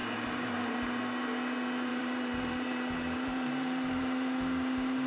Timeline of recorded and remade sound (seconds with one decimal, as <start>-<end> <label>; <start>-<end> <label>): 0.0-1.0 remade; 1.0-1.9 recorded; 1.9-5.1 remade